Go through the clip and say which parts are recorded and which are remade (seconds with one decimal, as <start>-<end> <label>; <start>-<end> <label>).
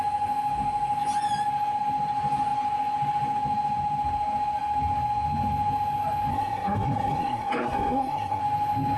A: 0.0-6.3 recorded; 6.3-8.4 remade; 8.4-9.0 recorded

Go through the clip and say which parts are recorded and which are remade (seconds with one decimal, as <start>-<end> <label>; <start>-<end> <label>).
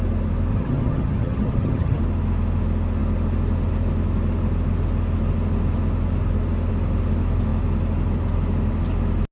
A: 0.0-0.5 recorded; 0.5-2.0 remade; 2.0-9.3 recorded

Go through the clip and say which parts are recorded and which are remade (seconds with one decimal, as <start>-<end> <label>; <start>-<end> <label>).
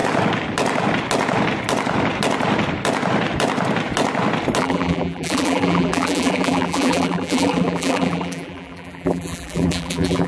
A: 0.0-4.6 recorded; 4.6-10.3 remade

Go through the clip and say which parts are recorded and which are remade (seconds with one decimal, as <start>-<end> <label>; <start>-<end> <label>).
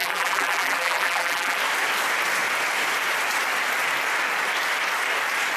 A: 0.0-1.6 remade; 1.6-5.6 recorded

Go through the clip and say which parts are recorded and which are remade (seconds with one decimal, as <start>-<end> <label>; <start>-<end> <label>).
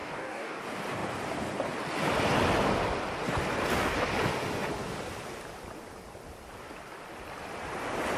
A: 0.0-0.6 remade; 0.6-8.2 recorded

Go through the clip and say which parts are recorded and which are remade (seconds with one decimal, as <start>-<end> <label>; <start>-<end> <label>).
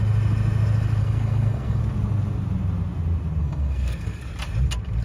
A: 0.0-1.0 recorded; 1.0-1.8 remade; 1.8-3.4 recorded; 3.4-4.2 remade; 4.2-5.0 recorded